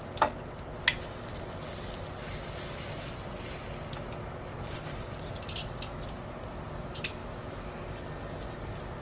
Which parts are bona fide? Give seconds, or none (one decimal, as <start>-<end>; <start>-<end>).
0.0-7.2; 7.7-9.0